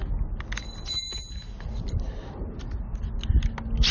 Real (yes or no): yes